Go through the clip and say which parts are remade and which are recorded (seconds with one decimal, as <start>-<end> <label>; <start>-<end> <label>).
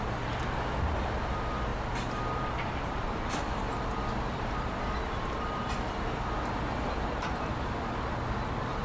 0.0-1.7 recorded; 1.7-3.4 remade; 3.4-8.8 recorded